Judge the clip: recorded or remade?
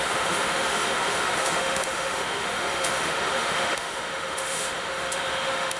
remade